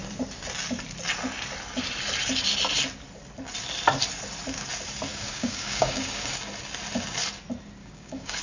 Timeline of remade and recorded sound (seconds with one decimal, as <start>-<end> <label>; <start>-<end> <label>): 0.0-5.1 recorded; 5.1-6.3 remade; 6.3-7.8 recorded; 7.8-8.4 remade